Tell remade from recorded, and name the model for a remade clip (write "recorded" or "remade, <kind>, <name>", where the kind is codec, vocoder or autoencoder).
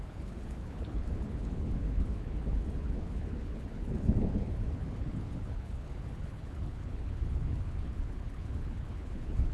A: remade, codec, HILCodec